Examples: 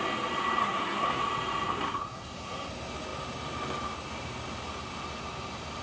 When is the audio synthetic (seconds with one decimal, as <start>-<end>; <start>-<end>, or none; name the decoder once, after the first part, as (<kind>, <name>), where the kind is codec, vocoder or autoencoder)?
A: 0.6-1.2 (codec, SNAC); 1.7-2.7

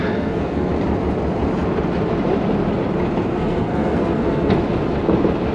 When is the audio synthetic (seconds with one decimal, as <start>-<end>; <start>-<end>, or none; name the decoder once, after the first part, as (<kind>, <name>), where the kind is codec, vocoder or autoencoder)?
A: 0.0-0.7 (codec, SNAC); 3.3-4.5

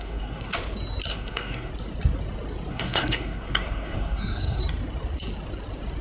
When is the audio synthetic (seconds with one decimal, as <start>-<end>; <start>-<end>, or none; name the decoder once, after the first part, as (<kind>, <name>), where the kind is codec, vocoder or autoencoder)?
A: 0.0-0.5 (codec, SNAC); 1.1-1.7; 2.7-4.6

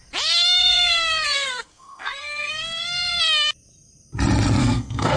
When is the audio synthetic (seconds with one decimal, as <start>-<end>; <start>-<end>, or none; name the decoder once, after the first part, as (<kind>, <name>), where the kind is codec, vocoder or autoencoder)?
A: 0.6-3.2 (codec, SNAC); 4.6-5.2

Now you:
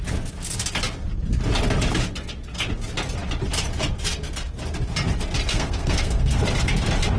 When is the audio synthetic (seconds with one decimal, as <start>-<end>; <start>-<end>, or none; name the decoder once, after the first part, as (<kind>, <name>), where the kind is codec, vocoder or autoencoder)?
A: 5.5-6.4 (codec, SNAC)

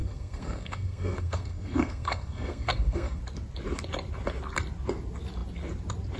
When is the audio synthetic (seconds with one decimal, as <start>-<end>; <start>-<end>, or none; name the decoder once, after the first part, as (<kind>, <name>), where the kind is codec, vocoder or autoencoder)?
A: 0.0-3.2 (codec, SNAC)

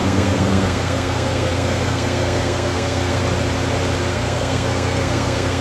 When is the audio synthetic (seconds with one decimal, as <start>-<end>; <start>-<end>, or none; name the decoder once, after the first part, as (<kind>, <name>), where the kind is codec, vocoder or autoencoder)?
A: 0.0-3.2 (codec, SNAC); 4.1-5.6

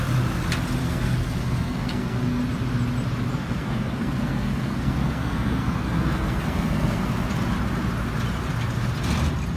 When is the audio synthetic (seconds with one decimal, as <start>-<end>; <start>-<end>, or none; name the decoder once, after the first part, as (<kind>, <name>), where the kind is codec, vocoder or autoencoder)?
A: 0.8-2.4 (codec, SNAC); 3.3-7.1